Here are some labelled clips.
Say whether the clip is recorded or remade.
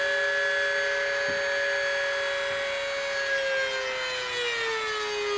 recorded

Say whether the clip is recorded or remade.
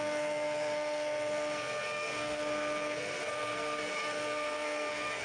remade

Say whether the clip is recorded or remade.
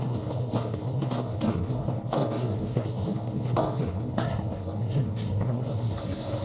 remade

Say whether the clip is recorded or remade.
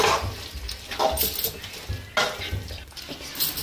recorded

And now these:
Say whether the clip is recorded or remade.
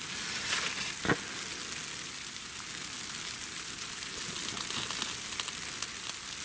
recorded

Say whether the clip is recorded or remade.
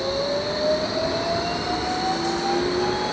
recorded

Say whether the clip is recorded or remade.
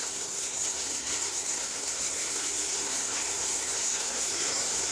remade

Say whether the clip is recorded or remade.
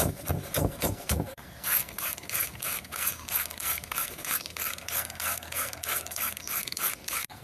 remade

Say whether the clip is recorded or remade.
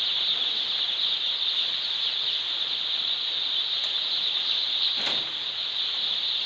recorded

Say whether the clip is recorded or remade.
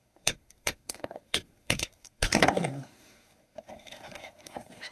remade